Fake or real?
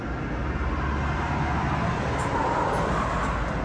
real